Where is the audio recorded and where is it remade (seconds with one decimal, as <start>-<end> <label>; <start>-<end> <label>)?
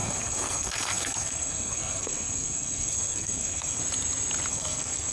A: 0.0-3.8 remade; 3.8-4.5 recorded; 4.5-5.1 remade